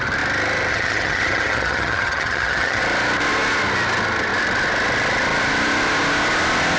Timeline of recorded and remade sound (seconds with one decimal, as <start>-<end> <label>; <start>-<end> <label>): 0.0-0.7 recorded; 0.7-2.8 remade; 2.8-6.8 recorded